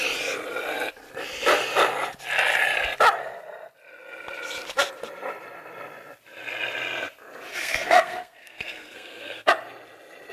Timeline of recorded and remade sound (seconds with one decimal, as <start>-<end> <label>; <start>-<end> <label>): 0.0-7.5 recorded; 7.5-9.5 remade; 9.5-10.3 recorded